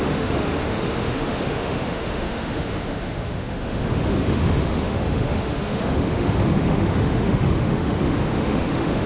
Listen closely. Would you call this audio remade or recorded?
remade